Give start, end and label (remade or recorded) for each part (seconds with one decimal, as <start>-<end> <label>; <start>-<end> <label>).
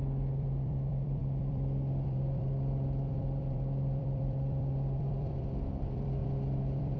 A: 0.0-7.0 remade